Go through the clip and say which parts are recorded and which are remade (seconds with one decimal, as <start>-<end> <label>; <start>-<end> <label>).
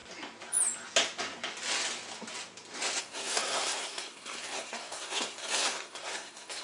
0.0-3.0 recorded; 3.0-6.6 remade